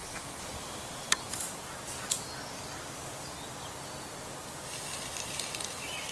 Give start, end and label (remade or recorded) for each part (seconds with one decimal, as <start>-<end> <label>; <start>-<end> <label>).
0.0-1.0 remade; 1.0-6.1 recorded